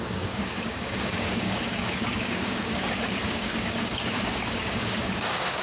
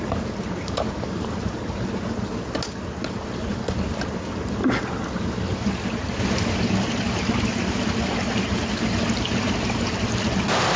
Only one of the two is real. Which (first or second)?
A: second